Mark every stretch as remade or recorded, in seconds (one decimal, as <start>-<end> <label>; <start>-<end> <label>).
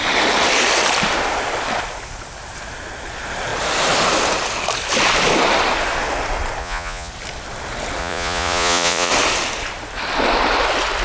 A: 0.0-6.6 recorded; 6.6-7.1 remade; 7.1-8.0 recorded; 8.0-9.1 remade; 9.1-11.0 recorded